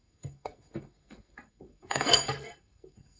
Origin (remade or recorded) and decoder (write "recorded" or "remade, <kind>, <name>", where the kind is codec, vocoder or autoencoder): remade, codec, SNAC